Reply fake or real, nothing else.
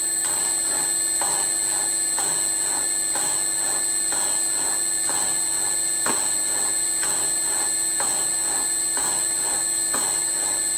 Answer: real